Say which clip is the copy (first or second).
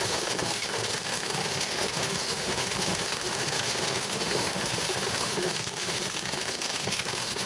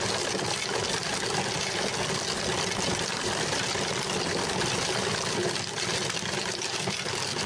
first